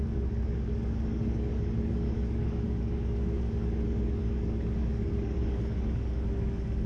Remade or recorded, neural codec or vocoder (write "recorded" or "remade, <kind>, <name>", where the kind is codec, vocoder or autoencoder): remade, codec, DAC